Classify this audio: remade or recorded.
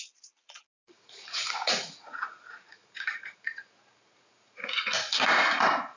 remade